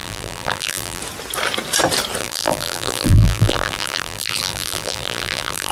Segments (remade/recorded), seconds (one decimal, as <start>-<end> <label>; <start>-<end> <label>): 0.0-1.0 remade; 1.0-2.2 recorded; 2.2-5.7 remade